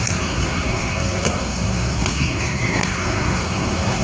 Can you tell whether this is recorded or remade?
remade